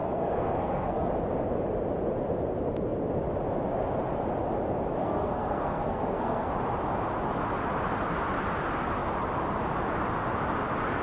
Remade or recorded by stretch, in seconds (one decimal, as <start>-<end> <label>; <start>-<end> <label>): 0.0-1.1 remade; 1.1-5.0 recorded; 5.0-6.5 remade; 6.5-11.0 recorded